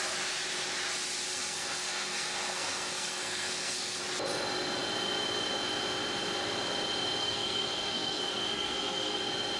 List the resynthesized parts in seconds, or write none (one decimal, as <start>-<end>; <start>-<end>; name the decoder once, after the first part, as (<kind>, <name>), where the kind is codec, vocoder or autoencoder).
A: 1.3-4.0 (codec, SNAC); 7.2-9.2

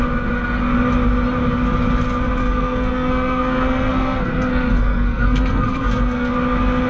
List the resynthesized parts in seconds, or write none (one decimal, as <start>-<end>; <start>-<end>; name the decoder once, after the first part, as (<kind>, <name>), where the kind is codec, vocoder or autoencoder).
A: 2.4-6.3 (codec, SNAC)

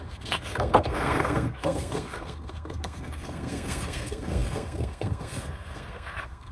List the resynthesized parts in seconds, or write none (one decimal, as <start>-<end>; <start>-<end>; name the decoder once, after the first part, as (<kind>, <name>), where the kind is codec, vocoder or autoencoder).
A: 0.0-6.5 (codec, SNAC)